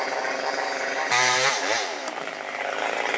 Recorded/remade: remade